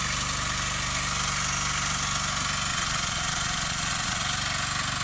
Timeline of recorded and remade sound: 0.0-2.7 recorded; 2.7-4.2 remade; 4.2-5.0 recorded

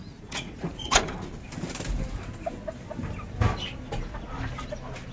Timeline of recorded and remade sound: 0.0-1.0 remade; 1.0-5.1 recorded